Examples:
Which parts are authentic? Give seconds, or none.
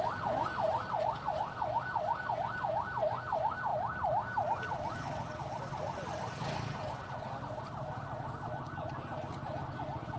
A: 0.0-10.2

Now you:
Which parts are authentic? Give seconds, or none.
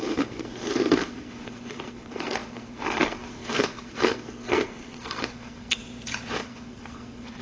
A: 5.8-6.4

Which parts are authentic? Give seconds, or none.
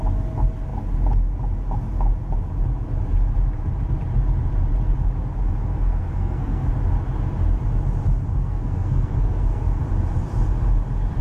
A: 0.0-5.7; 6.7-8.3; 9.8-11.2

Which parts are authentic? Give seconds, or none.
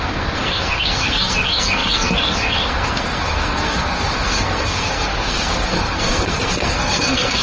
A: none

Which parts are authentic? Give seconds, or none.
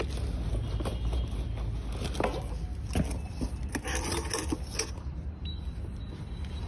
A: 0.0-6.7